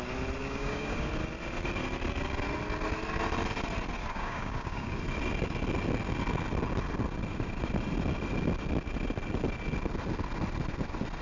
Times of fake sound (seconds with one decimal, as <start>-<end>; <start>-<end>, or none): 0.4-1.1; 4.0-5.0